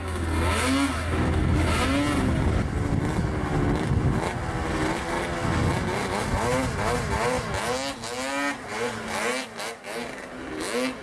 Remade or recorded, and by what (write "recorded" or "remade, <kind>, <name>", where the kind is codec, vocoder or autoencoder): recorded